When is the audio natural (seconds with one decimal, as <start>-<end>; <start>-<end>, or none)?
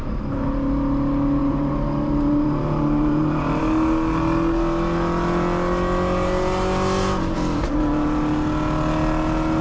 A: 0.0-1.4; 3.6-9.6